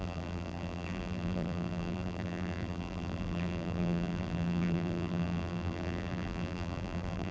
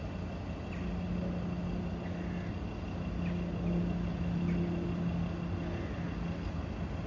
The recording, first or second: second